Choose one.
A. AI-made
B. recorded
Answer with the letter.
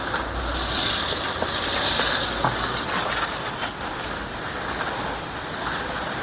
B